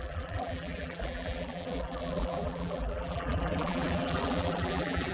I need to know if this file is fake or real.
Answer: fake